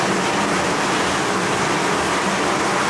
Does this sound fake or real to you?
real